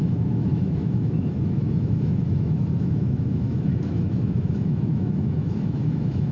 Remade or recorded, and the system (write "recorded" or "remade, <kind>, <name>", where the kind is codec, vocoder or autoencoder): remade, autoencoder, DAC-VAE